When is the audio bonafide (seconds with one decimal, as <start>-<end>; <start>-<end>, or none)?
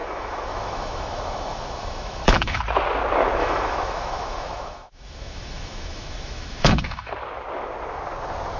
2.6-3.4; 7.1-8.6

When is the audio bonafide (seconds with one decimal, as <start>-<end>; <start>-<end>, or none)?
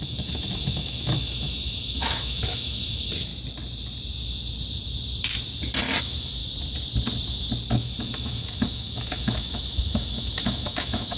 3.3-6.0; 6.4-7.7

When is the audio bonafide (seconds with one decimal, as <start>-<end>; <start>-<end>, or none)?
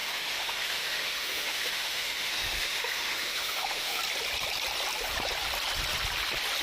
4.0-6.6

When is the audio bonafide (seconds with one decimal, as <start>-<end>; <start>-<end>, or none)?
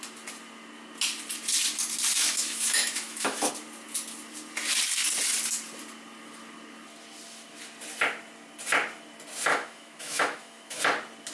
0.0-2.2; 3.5-9.5; 10.8-11.3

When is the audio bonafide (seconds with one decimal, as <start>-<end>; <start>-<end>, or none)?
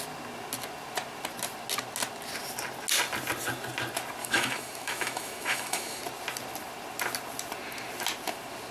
0.0-4.2; 6.0-8.7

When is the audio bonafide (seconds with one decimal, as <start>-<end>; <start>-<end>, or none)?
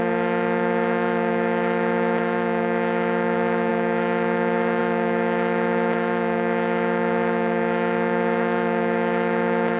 none